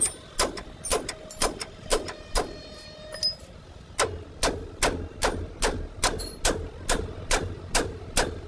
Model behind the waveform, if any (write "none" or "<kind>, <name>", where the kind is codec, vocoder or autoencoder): none